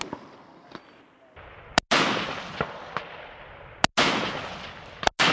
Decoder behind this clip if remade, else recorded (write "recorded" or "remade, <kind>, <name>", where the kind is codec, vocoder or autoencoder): recorded